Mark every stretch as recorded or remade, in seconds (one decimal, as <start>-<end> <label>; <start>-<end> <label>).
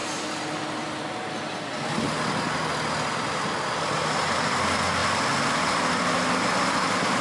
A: 0.0-7.2 recorded